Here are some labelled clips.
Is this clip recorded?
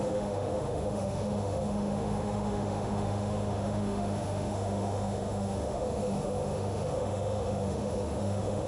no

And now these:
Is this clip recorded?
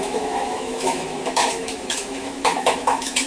no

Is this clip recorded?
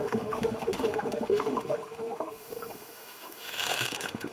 no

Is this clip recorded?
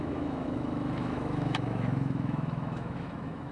no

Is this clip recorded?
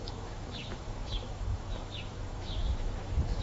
no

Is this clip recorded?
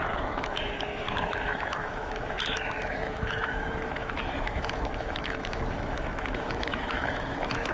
no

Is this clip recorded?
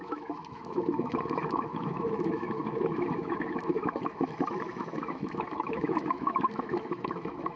no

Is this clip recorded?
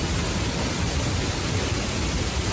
yes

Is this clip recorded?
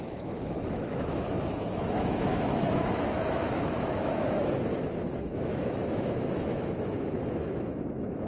no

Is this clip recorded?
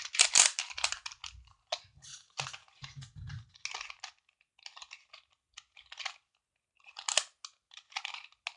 yes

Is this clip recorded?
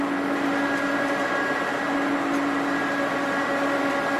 yes